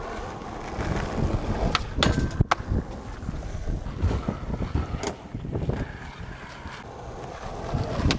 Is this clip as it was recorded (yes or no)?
yes